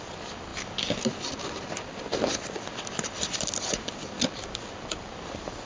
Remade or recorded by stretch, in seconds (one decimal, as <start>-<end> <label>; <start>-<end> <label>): 0.0-5.7 recorded